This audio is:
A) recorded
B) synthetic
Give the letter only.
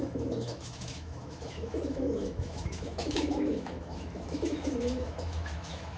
B